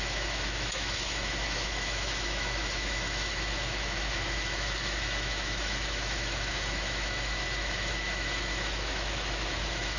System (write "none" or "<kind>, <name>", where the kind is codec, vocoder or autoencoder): autoencoder, DAC-VAE